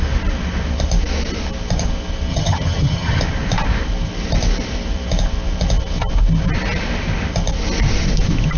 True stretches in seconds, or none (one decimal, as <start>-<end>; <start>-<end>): 0.0-2.3; 3.2-8.6